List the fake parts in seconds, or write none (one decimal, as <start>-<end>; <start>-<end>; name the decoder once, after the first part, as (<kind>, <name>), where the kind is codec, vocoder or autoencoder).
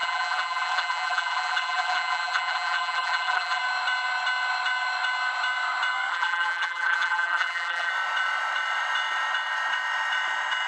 0.0-3.6 (vocoder, BigVGAN v2); 6.1-7.9